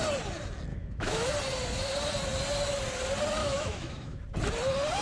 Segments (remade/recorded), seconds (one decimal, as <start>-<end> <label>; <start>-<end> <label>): 0.0-0.7 recorded; 0.7-1.3 remade; 1.3-3.4 recorded; 3.4-4.2 remade; 4.2-5.0 recorded